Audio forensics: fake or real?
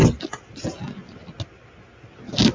real